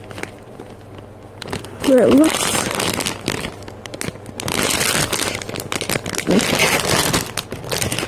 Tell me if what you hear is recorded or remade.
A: recorded